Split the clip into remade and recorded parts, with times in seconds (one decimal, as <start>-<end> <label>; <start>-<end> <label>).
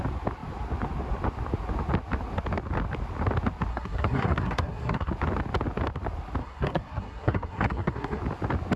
0.0-3.7 recorded; 3.7-5.1 remade; 5.1-6.4 recorded; 6.4-8.2 remade; 8.2-8.8 recorded